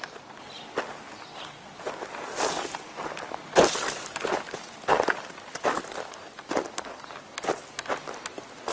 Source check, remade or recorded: recorded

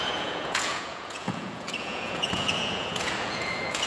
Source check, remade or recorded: remade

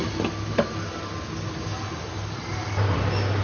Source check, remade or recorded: recorded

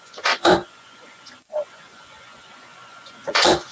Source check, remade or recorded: remade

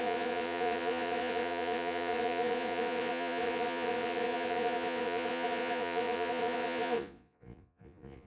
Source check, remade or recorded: remade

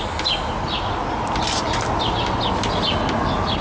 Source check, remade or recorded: recorded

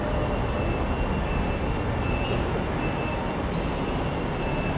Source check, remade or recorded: recorded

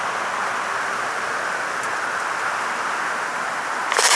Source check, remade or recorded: recorded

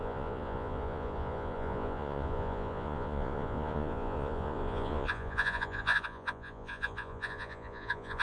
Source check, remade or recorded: remade